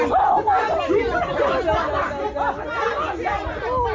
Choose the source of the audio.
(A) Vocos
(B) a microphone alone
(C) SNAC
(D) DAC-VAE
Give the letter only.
B